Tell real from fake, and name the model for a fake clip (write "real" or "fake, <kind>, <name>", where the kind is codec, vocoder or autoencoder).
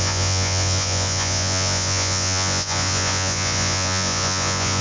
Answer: fake, vocoder, Vocos